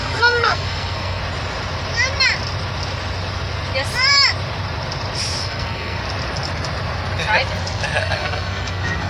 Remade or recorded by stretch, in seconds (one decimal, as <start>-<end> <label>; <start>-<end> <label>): 0.0-1.2 remade; 1.2-5.4 recorded; 5.4-6.0 remade; 6.0-8.0 recorded; 8.0-9.1 remade